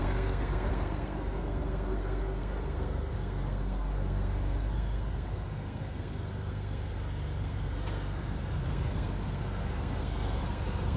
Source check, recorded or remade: remade